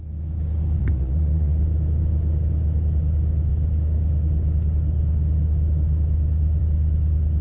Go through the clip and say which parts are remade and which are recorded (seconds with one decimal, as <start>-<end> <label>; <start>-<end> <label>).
0.0-0.8 recorded; 0.8-1.6 remade; 1.6-7.4 recorded